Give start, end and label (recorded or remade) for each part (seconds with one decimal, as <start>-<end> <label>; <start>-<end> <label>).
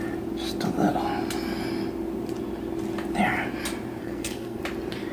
0.0-4.0 recorded; 4.0-4.6 remade; 4.6-5.1 recorded